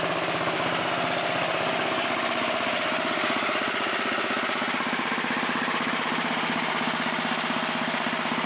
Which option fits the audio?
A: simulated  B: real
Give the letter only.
B